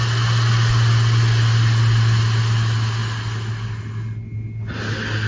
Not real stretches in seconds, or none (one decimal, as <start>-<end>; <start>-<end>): none